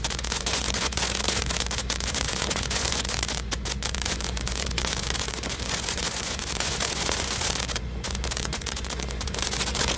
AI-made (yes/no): yes